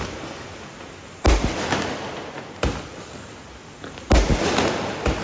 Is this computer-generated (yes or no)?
no